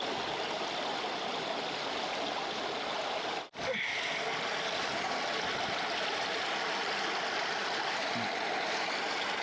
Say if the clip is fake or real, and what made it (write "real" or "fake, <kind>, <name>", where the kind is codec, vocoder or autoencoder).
real